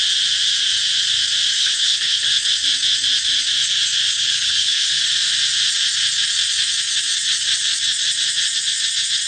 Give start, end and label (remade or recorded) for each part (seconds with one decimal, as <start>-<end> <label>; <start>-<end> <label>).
0.0-1.5 recorded; 1.5-2.5 remade; 2.5-4.1 recorded; 4.1-5.0 remade; 5.0-9.3 recorded